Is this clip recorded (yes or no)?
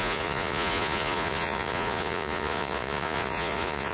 no